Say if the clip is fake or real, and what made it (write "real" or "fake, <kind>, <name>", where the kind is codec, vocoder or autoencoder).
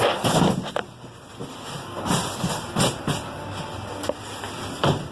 real